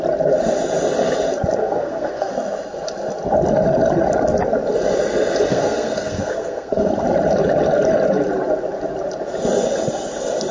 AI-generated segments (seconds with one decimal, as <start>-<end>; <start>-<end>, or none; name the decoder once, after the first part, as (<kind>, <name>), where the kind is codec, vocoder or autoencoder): 1.6-2.3 (codec, SNAC); 5.5-6.9